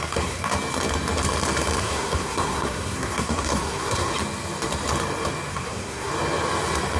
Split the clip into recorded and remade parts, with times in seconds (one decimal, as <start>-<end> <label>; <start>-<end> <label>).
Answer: 0.0-0.5 remade; 0.5-1.8 recorded; 1.8-4.1 remade; 4.1-5.5 recorded; 5.5-6.1 remade; 6.1-7.0 recorded

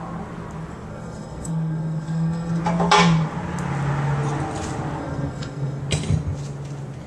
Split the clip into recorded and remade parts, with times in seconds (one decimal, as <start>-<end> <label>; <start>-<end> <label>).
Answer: 0.0-0.9 recorded; 0.9-2.6 remade; 2.6-5.0 recorded; 5.0-5.8 remade; 5.8-7.1 recorded

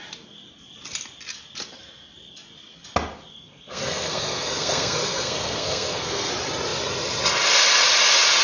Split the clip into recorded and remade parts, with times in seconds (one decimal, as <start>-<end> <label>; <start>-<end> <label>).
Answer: 0.0-3.3 recorded; 3.3-6.3 remade; 6.3-8.4 recorded

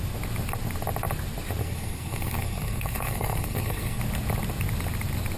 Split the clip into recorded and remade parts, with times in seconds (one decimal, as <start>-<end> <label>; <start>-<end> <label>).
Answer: 0.0-1.6 recorded; 1.6-4.0 remade; 4.0-5.4 recorded

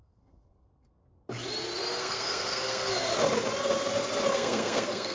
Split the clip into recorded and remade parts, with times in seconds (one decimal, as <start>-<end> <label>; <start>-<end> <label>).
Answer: 0.0-1.0 remade; 1.0-2.0 recorded; 2.0-3.1 remade; 3.1-4.3 recorded; 4.3-5.1 remade

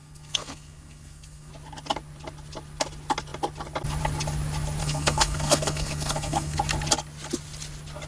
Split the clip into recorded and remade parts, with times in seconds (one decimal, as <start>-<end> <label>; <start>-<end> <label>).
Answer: 0.0-1.5 remade; 1.5-4.8 recorded; 4.8-6.6 remade; 6.6-8.1 recorded

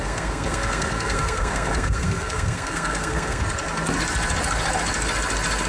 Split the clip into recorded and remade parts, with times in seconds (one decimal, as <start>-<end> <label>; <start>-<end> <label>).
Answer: 0.0-3.4 remade; 3.4-5.7 recorded